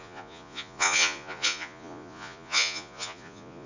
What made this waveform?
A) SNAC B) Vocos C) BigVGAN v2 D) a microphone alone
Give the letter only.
B